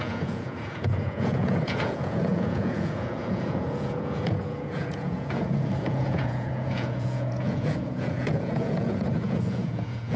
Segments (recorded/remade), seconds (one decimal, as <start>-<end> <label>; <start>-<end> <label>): 0.0-10.2 remade